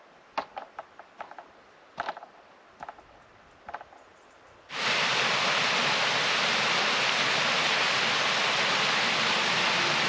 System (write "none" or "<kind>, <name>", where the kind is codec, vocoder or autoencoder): none